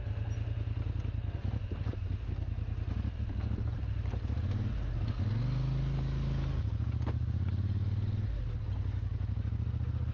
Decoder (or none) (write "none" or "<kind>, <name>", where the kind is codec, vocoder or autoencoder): none